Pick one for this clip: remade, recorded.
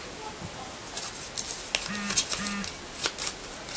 recorded